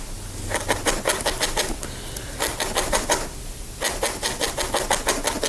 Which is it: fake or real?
real